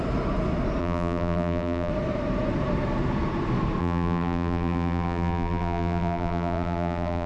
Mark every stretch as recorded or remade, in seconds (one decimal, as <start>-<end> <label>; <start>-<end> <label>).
0.0-0.8 recorded; 0.8-1.9 remade; 1.9-3.8 recorded; 3.8-7.3 remade

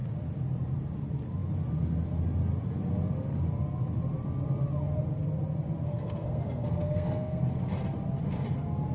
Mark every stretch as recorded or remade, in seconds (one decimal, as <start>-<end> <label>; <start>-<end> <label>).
0.0-5.9 recorded; 5.9-7.4 remade; 7.4-8.9 recorded

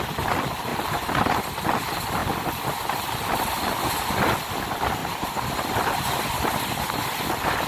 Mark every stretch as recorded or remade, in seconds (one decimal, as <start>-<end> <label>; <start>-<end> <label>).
0.0-5.0 recorded; 5.0-6.2 remade; 6.2-7.7 recorded

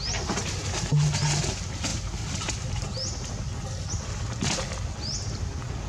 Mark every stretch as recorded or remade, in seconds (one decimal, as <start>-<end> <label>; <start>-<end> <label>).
0.0-5.9 recorded

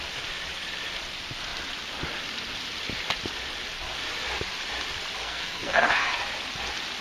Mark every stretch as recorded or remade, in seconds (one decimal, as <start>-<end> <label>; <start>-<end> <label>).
0.0-5.2 recorded; 5.2-6.2 remade; 6.2-7.0 recorded

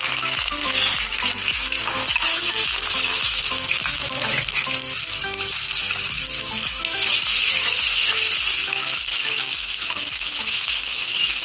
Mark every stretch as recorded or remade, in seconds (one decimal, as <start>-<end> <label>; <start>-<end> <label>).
0.0-11.4 remade

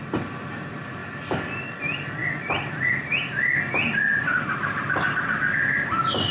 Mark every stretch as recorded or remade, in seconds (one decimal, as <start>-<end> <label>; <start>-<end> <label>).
0.0-6.3 recorded

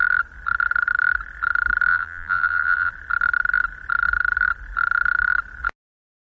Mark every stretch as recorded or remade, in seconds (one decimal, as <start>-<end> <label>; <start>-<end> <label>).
0.0-1.9 recorded; 1.9-2.9 remade; 2.9-6.3 recorded